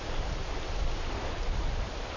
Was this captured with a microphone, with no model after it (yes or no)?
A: yes